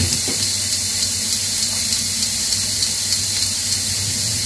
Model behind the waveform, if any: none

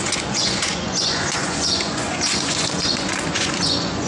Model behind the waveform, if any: vocoder, Vocos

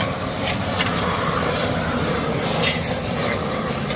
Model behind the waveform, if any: none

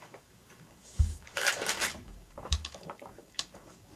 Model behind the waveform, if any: codec, DAC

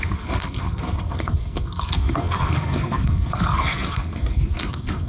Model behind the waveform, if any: codec, SNAC